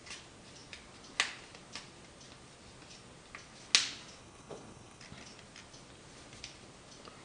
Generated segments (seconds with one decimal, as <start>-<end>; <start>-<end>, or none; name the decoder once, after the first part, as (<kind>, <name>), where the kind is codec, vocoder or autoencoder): 4.2-5.0 (codec, HILCodec)

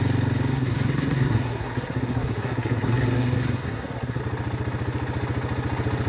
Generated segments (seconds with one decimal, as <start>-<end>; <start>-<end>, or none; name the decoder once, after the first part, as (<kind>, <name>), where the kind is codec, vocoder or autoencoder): 0.5-4.2 (codec, SNAC)

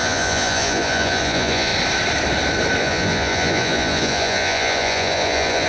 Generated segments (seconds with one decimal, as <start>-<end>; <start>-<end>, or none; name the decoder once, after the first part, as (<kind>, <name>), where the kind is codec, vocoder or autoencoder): 0.0-1.7 (vocoder, Vocos); 2.8-5.7

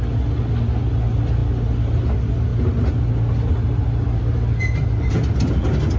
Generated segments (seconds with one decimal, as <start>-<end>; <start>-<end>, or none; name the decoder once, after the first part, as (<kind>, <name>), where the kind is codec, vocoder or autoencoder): none

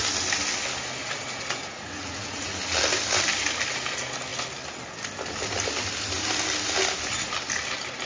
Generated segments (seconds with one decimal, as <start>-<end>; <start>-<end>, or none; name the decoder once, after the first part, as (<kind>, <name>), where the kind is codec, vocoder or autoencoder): 1.0-2.5 (vocoder, Vocos)

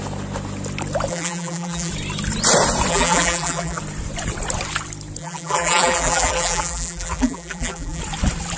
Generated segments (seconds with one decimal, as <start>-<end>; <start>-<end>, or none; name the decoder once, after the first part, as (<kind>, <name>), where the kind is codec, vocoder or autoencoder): 1.1-1.9 (vocoder, BigVGAN v2); 2.9-3.8; 5.2-8.0

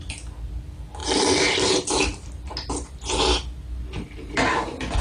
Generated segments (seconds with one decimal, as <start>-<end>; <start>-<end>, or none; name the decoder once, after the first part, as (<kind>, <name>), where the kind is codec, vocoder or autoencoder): none